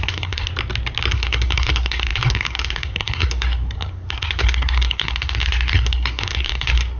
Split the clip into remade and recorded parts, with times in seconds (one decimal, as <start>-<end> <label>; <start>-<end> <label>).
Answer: 0.0-0.5 remade; 0.5-1.1 recorded; 1.1-7.0 remade